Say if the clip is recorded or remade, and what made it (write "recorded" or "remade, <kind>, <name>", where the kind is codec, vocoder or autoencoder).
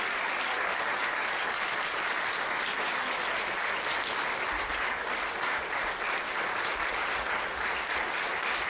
recorded